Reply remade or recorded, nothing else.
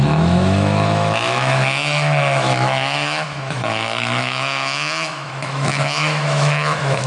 remade